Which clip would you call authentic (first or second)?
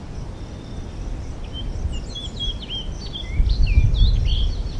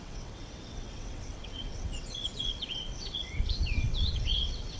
first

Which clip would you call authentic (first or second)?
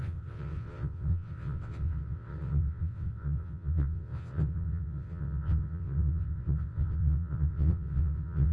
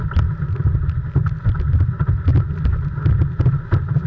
second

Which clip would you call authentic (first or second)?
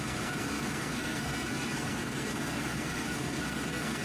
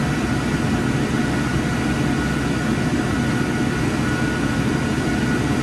second